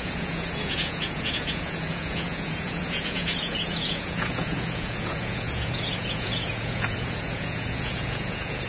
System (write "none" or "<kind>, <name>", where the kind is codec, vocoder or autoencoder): vocoder, Vocos